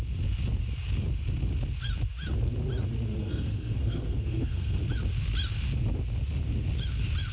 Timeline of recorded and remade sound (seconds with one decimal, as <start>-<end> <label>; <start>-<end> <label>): 0.0-3.2 recorded; 3.2-4.8 remade; 4.8-7.3 recorded